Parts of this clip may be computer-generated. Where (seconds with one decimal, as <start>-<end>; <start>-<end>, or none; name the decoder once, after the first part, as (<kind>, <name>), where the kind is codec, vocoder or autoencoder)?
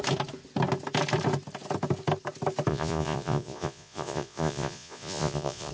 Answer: 2.7-5.7 (vocoder, Vocos)